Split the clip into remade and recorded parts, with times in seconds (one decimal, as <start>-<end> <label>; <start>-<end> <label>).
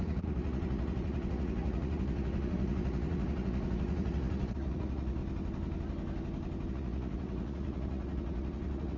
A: 0.0-5.2 remade; 5.2-6.7 recorded; 6.7-9.0 remade